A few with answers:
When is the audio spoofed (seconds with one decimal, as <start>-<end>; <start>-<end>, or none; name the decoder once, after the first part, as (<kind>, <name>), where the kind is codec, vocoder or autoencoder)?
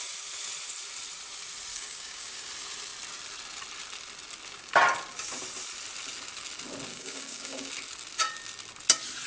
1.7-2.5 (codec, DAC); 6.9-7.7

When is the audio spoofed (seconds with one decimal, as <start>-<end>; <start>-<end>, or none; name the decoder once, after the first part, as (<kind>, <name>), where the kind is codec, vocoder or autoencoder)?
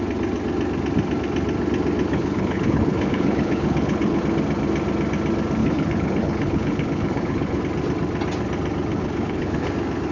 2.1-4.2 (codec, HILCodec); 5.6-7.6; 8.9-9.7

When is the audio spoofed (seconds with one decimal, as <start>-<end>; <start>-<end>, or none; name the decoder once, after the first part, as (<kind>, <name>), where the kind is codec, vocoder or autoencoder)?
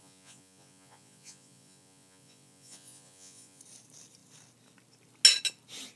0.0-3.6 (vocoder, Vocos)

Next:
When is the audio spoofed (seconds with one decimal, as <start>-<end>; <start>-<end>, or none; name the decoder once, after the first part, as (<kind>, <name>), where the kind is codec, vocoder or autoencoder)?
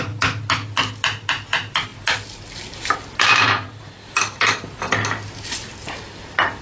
none